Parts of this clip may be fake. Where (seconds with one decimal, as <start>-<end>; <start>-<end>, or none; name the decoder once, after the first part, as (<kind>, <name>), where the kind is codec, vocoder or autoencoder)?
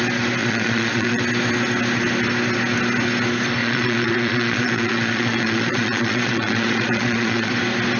0.4-1.2 (vocoder, Vocos); 3.6-7.5